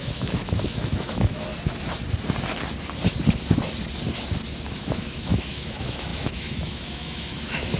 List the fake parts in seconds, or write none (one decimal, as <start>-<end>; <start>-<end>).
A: 0.0-1.5; 4.6-7.8